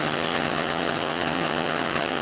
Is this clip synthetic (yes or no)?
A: yes